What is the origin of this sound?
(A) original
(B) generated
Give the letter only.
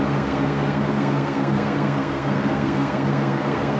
B